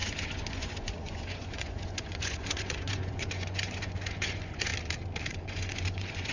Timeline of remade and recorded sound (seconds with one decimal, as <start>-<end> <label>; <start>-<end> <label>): 0.0-4.7 remade; 4.7-5.3 recorded; 5.3-6.3 remade